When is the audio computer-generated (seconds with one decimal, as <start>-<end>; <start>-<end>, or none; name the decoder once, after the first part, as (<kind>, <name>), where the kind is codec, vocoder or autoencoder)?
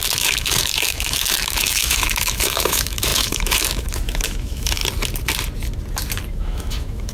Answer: 0.0-4.8 (autoencoder, DAC-VAE); 6.3-7.1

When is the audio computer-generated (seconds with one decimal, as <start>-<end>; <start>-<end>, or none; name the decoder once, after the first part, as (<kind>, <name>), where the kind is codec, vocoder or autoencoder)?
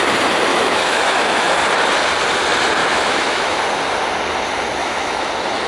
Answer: 0.5-1.5 (autoencoder, DAC-VAE); 2.8-3.6; 4.8-5.3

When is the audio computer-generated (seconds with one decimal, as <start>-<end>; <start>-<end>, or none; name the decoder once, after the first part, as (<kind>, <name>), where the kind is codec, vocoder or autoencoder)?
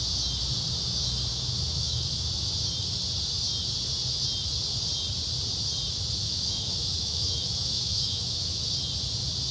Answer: 1.3-2.4 (autoencoder, DAC-VAE); 6.2-8.7